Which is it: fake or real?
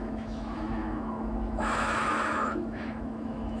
fake